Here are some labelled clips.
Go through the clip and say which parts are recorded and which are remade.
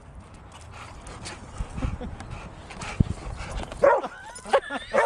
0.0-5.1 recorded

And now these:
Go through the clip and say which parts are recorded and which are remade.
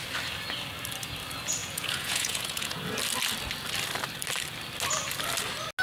0.0-1.6 recorded; 1.6-2.8 remade; 2.8-5.8 recorded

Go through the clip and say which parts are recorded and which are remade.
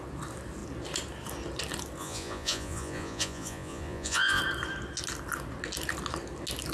0.0-2.0 recorded; 2.0-4.4 remade; 4.4-6.7 recorded